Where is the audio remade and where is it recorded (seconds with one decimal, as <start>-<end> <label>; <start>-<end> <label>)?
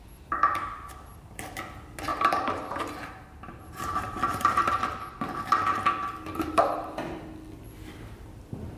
0.0-2.1 recorded; 2.1-4.7 remade; 4.7-8.8 recorded